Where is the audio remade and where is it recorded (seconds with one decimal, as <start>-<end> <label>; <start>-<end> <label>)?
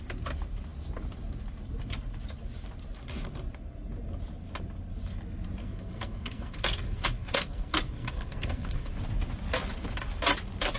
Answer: 0.0-5.6 recorded; 5.6-8.9 remade; 8.9-10.8 recorded